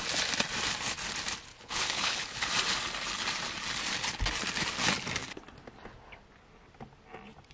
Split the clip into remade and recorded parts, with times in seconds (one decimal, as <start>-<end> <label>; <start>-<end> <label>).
0.0-1.5 recorded; 1.5-2.5 remade; 2.5-7.5 recorded